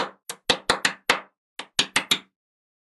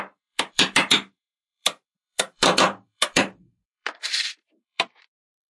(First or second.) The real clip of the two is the first